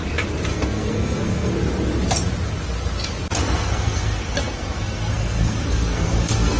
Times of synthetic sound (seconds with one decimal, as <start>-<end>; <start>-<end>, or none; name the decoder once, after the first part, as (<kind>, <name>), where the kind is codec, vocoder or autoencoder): 0.5-1.5 (codec, SNAC); 3.4-6.6